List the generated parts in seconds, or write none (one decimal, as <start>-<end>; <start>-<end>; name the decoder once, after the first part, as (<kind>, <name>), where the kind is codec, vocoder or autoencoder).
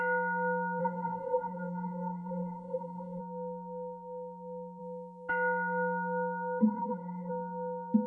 0.8-3.2 (codec, SNAC); 6.6-7.3